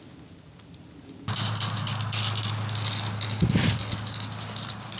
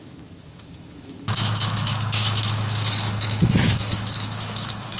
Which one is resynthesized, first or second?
second